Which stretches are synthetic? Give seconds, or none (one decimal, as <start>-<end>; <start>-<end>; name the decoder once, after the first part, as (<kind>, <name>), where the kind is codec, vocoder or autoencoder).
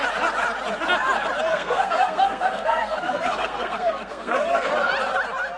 1.5-4.9 (codec, SNAC)